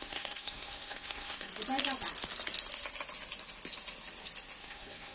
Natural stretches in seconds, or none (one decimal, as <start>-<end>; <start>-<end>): 1.5-4.6